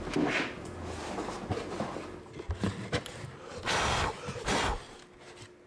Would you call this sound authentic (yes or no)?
yes